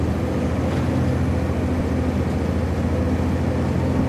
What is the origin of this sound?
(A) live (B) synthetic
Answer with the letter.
A